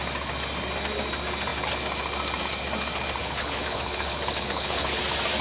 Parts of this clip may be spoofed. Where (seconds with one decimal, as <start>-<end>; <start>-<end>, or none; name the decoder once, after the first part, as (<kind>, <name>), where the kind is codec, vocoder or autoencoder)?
3.2-5.0 (codec, HILCodec)